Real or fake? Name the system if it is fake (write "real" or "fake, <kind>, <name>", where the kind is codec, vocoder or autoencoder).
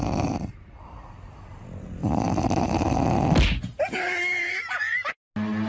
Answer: real